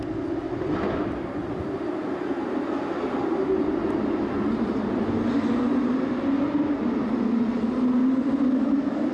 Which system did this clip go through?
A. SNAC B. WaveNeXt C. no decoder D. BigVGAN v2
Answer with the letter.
C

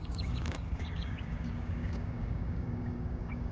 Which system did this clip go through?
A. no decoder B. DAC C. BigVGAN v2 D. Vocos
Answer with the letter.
B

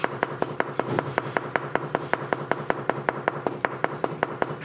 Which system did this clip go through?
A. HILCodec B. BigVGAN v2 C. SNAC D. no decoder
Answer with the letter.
B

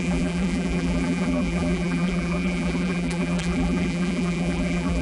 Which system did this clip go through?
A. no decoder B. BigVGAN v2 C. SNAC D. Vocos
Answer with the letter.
B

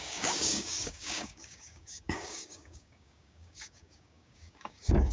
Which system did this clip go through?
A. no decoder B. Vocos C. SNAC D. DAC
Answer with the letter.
D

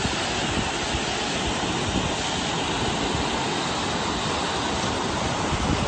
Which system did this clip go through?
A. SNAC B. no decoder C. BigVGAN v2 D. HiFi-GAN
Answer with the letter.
B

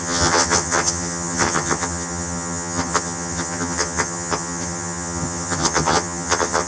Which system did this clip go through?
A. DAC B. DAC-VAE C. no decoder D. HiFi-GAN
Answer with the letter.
D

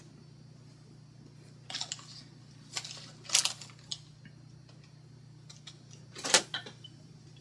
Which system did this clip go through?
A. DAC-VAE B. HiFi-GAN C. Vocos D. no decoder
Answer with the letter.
D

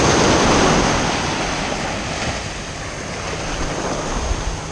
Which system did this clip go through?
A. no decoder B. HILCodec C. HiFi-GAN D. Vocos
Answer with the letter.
A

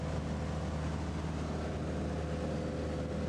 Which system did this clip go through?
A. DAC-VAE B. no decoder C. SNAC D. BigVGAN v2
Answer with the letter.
B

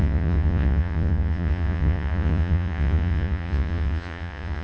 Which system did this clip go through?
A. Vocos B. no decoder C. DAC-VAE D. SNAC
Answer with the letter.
A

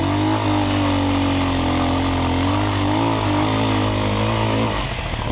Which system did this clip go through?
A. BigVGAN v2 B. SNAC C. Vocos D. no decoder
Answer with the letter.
D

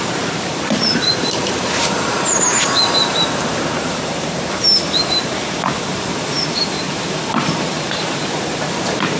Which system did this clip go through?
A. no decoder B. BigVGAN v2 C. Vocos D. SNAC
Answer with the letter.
B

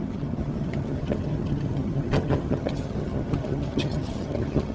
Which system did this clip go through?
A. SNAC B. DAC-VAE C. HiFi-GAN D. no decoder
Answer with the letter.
C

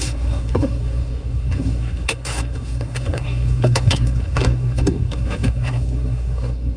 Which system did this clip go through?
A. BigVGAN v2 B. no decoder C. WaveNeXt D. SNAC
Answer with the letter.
D